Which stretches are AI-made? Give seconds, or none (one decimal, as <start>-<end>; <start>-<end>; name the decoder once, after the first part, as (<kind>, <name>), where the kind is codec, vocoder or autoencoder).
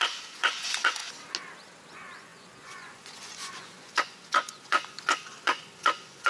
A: 0.0-1.0 (vocoder, Vocos); 1.9-6.3